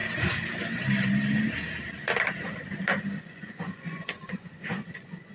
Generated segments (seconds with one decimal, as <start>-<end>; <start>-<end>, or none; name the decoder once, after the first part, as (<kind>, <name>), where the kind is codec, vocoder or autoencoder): 3.2-5.3 (vocoder, Vocos)